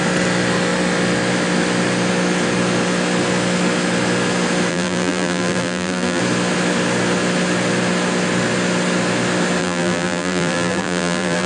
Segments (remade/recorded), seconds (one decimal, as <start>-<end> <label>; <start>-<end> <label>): 0.0-4.7 recorded; 4.7-6.2 remade; 6.2-9.6 recorded; 9.6-11.5 remade